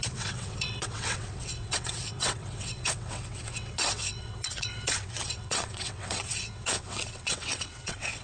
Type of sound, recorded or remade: remade